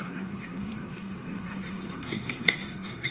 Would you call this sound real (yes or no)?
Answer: no